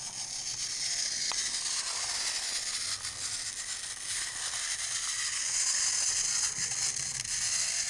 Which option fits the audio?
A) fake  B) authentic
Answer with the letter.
B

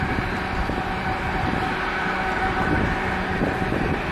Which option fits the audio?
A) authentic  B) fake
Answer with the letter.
A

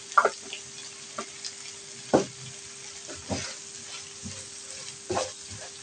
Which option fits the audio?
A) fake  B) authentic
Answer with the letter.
B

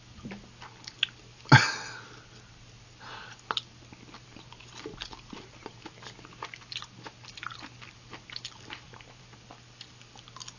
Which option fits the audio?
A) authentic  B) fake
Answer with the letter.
A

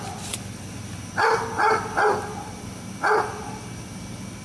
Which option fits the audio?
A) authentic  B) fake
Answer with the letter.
A